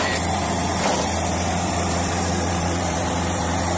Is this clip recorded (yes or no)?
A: no